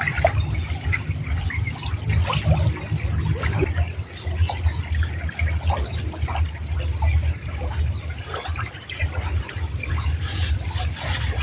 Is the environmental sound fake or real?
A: real